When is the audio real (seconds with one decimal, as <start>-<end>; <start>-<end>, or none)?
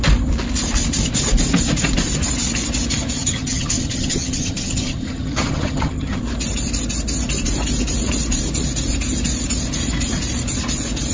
0.0-3.2; 6.2-11.1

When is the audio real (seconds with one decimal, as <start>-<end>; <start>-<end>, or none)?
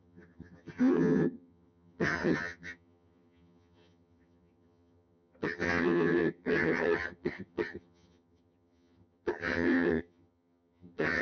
none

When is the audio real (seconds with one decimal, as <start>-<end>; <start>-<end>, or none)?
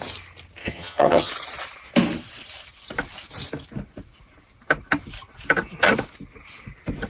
0.0-0.6; 1.3-7.1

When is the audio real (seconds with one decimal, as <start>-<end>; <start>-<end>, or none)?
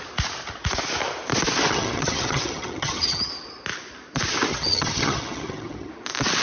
0.0-1.7; 3.3-4.5; 5.9-6.4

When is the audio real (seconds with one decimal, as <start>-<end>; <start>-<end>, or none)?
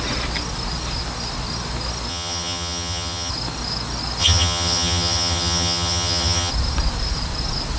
0.0-2.1; 3.3-4.2; 6.5-7.8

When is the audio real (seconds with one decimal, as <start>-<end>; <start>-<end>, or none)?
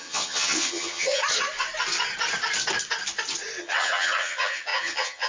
1.2-3.6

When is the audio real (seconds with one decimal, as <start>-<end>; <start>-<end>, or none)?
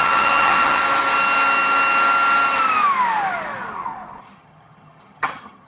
0.8-4.2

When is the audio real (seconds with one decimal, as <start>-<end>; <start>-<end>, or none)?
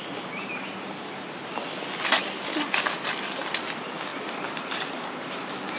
0.0-5.8